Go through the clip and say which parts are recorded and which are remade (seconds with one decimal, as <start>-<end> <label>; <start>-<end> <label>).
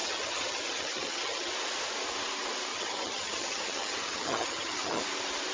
0.0-1.5 remade; 1.5-2.7 recorded; 2.7-5.0 remade; 5.0-5.5 recorded